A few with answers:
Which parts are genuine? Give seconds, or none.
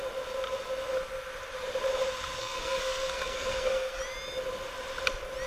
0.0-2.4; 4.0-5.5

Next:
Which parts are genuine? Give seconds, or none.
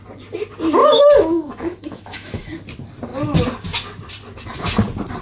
0.0-0.8; 2.6-5.2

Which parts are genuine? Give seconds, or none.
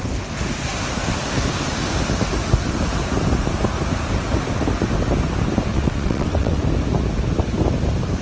0.0-5.7; 6.6-8.2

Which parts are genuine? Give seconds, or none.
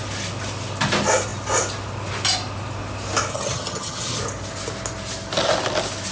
0.0-3.3; 4.2-6.1